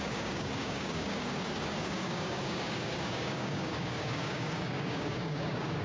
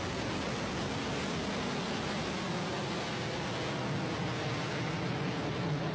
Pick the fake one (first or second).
first